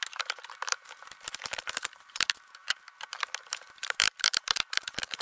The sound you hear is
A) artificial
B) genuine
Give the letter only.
A